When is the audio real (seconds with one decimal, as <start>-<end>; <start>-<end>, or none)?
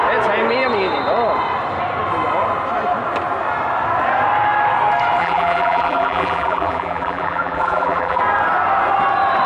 0.0-5.2; 8.2-9.5